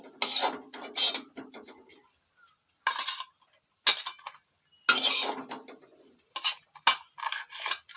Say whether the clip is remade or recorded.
recorded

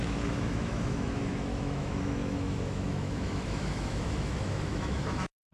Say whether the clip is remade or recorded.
remade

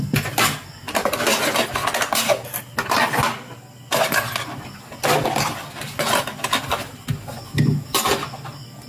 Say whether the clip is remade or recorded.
recorded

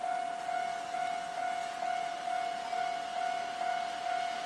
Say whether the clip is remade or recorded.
recorded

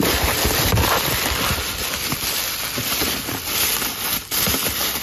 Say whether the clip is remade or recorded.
recorded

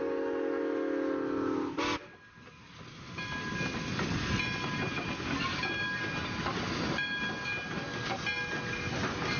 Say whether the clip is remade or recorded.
recorded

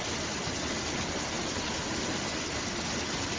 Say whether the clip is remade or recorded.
recorded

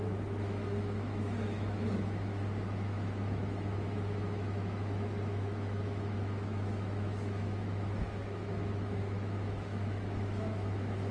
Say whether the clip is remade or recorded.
remade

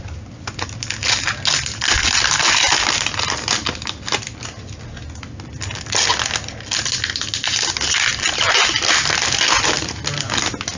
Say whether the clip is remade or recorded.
recorded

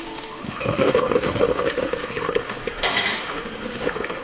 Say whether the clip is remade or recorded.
remade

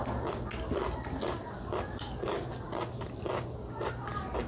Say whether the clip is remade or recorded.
recorded